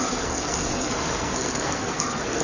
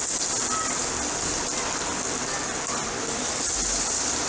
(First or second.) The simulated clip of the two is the first